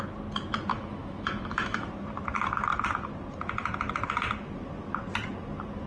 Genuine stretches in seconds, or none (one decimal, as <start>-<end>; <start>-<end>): 0.0-0.7; 1.9-5.9